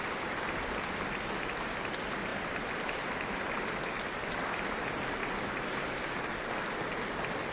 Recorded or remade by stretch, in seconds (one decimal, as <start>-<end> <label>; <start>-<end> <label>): 0.0-7.5 recorded